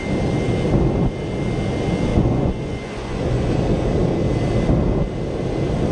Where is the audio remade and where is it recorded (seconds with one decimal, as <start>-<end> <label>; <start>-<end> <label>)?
0.0-2.1 recorded; 2.1-3.5 remade; 3.5-5.9 recorded